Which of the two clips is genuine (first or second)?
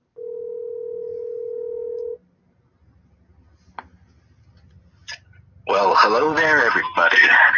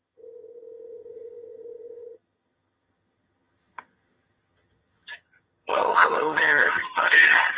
first